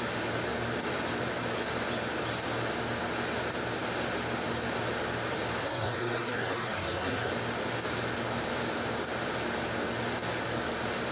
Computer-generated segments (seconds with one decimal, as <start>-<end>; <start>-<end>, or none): 5.6-7.3